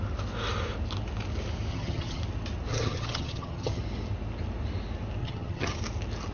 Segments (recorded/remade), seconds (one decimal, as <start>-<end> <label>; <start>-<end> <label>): 0.0-1.7 recorded; 1.7-2.2 remade; 2.2-2.7 recorded; 2.7-3.8 remade; 3.8-5.2 recorded; 5.2-5.8 remade; 5.8-6.3 recorded